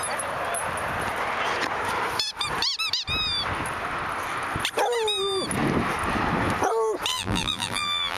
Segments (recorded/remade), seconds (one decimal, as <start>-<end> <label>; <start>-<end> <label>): 0.0-7.1 recorded; 7.1-8.2 remade